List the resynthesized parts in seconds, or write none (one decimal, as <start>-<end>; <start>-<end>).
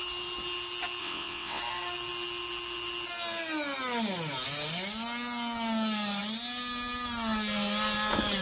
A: 1.0-1.6